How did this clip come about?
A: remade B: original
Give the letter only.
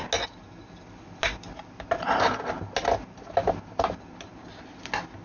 B